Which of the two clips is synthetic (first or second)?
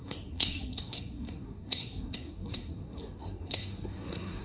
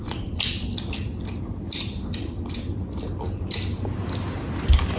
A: first